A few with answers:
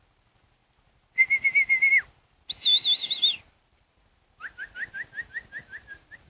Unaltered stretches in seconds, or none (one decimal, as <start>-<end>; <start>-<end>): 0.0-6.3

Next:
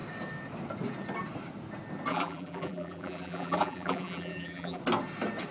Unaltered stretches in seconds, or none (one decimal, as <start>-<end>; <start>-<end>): 0.0-2.1; 4.8-5.5

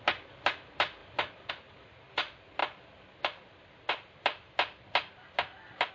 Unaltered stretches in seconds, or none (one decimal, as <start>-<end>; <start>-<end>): 0.0-5.9

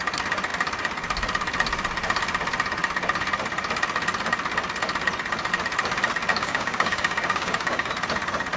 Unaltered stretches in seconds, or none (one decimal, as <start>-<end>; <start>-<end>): 0.0-6.3; 7.9-8.6

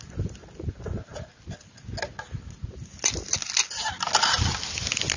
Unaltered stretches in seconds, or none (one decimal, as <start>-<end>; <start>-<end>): 0.0-5.2

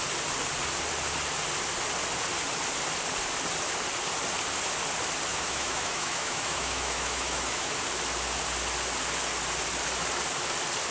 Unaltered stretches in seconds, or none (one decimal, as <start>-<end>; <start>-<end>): 0.0-5.3; 7.7-10.9

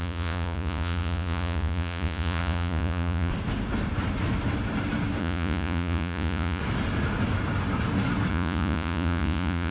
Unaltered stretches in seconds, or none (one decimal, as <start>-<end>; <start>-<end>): 3.3-5.2; 6.6-8.3

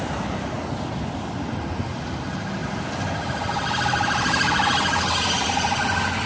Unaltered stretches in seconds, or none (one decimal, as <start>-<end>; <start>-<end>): 0.0-6.3